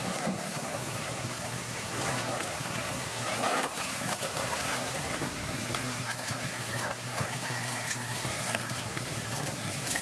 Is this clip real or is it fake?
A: fake